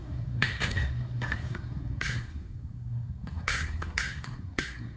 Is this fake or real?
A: fake